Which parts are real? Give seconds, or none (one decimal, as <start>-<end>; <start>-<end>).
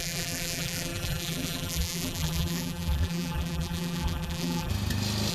4.7-5.3